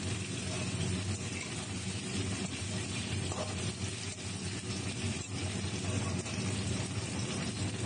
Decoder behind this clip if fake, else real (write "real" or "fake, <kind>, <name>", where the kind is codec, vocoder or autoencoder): real